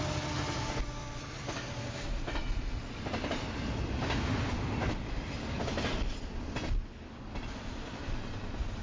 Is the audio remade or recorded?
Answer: recorded